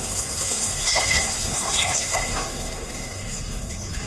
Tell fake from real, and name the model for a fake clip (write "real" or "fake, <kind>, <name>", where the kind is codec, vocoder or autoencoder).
fake, codec, SNAC